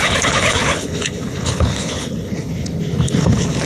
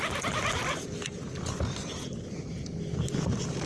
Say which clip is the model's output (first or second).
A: first